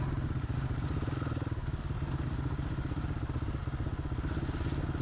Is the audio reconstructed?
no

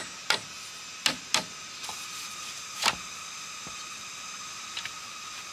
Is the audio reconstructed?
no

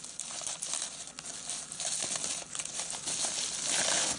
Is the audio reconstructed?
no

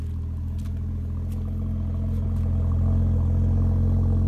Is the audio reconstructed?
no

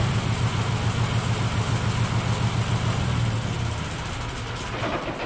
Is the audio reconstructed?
no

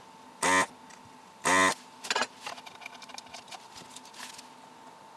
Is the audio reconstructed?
no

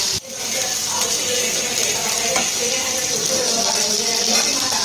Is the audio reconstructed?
no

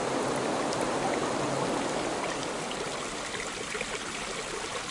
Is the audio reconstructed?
no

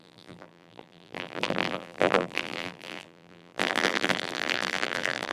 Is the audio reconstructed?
yes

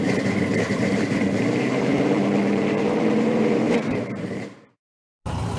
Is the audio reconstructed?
yes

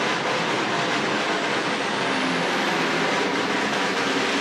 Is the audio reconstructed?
no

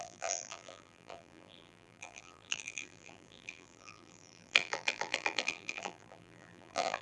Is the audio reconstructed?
yes